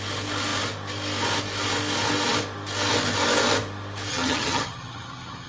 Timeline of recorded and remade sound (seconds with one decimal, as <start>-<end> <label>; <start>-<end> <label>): 0.0-4.1 recorded; 4.1-5.5 remade